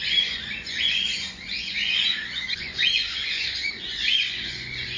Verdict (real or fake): fake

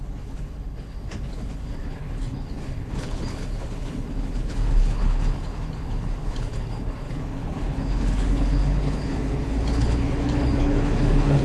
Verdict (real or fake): fake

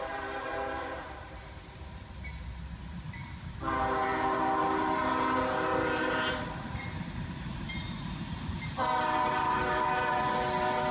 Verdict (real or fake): fake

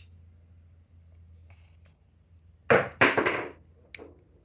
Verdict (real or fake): real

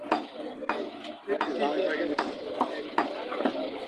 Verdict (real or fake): real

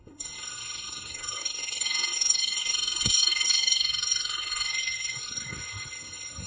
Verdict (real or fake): fake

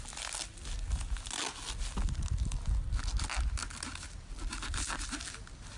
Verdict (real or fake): real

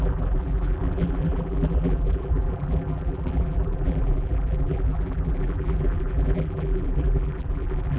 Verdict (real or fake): fake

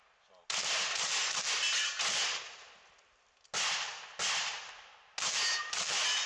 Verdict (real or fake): real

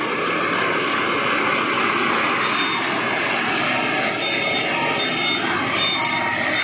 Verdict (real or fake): real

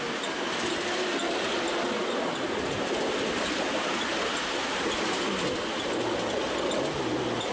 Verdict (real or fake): real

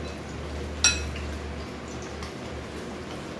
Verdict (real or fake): real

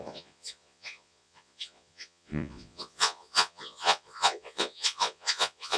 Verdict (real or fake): fake